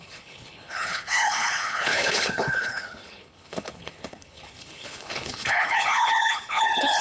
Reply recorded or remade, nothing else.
remade